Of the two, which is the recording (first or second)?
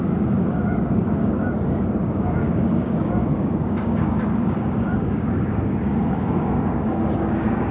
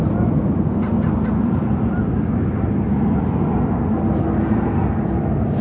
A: second